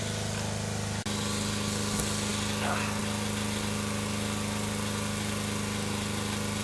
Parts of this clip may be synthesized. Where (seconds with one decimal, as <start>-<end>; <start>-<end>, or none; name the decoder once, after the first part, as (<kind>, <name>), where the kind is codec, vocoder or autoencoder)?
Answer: none